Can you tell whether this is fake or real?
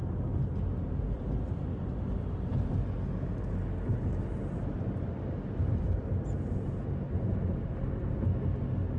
real